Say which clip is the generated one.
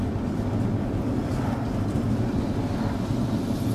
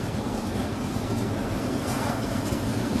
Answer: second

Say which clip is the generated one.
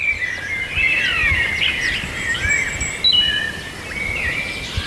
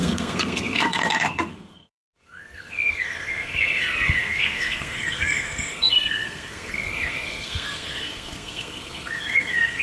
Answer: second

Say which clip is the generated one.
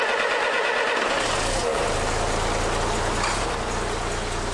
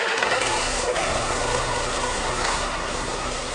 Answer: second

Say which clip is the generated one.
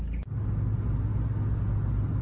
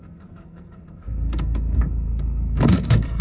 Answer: second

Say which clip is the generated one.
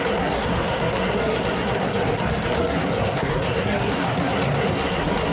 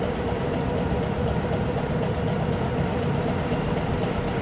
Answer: first